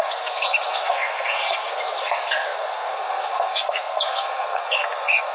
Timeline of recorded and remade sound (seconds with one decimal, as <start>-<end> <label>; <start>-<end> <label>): 0.0-5.3 remade